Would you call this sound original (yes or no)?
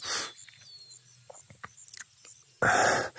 yes